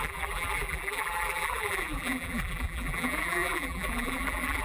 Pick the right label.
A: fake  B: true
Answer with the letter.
A